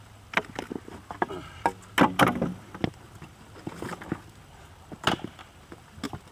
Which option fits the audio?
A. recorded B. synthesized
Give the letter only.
A